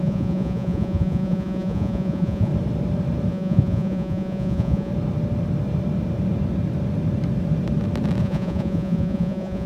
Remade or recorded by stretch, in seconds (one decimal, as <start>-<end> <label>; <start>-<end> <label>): 0.0-2.5 remade; 2.5-3.3 recorded; 3.3-4.9 remade; 4.9-8.2 recorded; 8.2-9.7 remade